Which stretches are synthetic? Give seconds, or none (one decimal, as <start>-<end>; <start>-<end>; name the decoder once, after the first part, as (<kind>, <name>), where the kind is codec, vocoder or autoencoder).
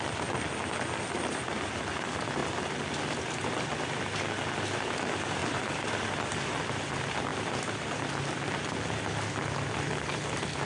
2.4-3.0 (vocoder, BigVGAN v2); 5.4-6.3; 7.3-8.1